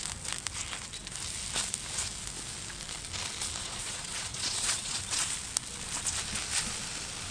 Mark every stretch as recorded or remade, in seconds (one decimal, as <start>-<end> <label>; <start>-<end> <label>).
0.0-3.6 recorded; 3.6-5.0 remade; 5.0-7.3 recorded